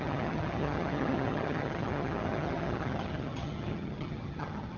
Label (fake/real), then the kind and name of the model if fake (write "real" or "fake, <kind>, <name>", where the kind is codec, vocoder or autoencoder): fake, vocoder, HiFi-GAN